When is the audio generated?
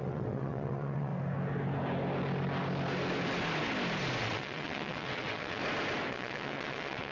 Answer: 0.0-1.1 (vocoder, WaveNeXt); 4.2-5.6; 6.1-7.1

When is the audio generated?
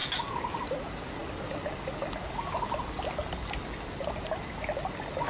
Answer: none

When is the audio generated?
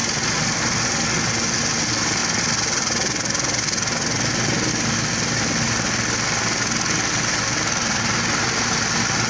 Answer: none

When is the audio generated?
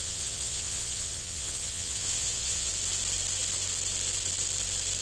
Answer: 0.0-2.7 (vocoder, WaveNeXt)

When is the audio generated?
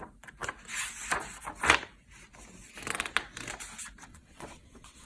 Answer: 4.1-5.1 (vocoder, WaveNeXt)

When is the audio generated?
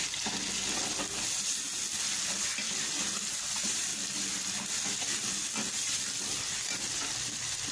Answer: none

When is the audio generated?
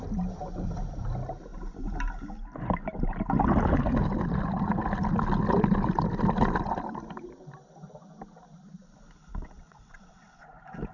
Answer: 9.3-10.4 (vocoder, WaveNeXt)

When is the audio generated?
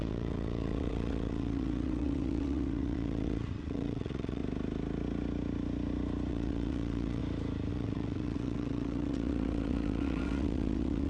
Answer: 0.0-4.4 (vocoder, WaveNeXt); 6.3-7.2; 7.7-11.1